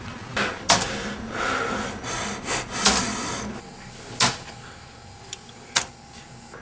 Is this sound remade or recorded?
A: recorded